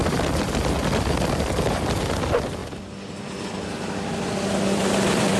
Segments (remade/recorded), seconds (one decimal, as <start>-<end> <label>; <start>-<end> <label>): 0.0-1.5 remade; 1.5-5.4 recorded